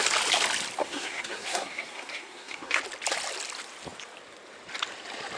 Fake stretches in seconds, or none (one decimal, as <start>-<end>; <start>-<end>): 0.8-2.8